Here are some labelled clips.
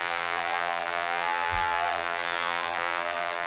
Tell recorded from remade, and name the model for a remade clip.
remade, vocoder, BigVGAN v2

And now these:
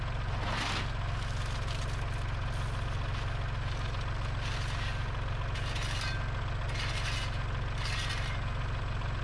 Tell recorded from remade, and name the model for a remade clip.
recorded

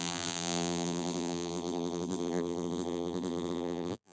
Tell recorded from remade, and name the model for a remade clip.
remade, vocoder, BigVGAN v2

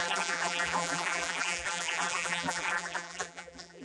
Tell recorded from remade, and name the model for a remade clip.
remade, vocoder, BigVGAN v2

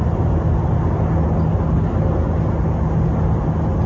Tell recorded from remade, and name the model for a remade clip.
recorded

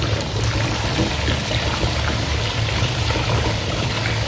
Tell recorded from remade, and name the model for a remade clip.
recorded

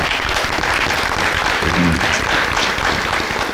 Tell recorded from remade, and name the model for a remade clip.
recorded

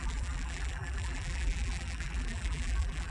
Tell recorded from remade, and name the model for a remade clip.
remade, vocoder, BigVGAN v2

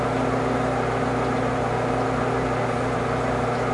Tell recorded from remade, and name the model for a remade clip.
recorded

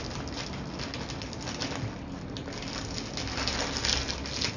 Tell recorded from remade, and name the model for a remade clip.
recorded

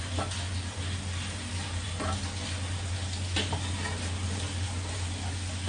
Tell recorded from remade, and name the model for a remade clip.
recorded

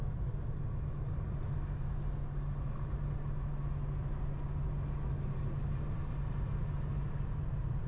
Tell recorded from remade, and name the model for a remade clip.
recorded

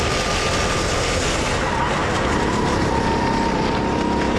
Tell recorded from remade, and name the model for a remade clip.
recorded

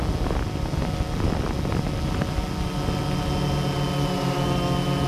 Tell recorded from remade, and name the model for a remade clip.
recorded